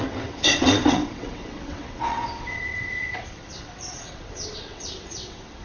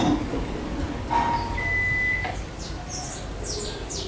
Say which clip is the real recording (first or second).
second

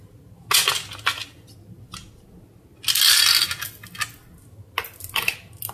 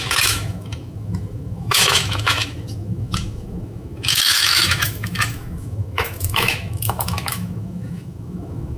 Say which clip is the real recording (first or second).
first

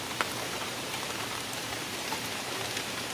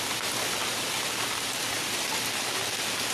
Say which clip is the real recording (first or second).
second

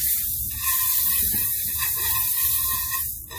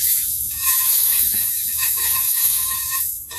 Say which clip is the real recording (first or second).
first